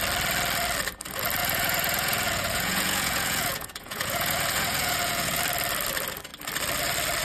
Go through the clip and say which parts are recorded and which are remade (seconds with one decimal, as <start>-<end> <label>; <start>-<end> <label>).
0.0-1.4 recorded; 1.4-5.4 remade; 5.4-7.2 recorded